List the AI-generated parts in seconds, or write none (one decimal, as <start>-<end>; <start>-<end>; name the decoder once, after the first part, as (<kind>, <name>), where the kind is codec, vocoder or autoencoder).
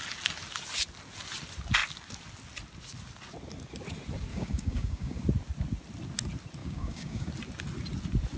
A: 4.3-5.2 (codec, DAC); 6.6-7.3